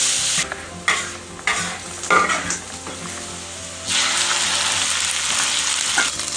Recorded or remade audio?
recorded